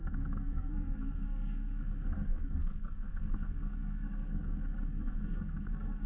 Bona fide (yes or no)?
no